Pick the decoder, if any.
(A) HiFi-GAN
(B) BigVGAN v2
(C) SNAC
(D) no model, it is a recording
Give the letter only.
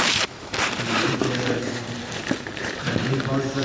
B